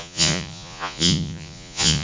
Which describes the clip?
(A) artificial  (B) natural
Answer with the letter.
A